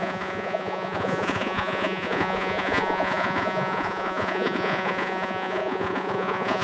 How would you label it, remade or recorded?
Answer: remade